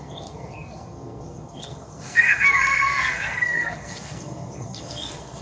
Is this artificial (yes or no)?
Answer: yes